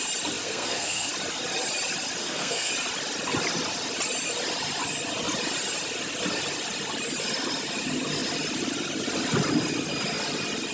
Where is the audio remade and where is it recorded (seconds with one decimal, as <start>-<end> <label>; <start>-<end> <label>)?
0.0-0.4 recorded; 0.4-1.1 remade; 1.1-2.2 recorded; 2.2-2.7 remade; 2.7-10.7 recorded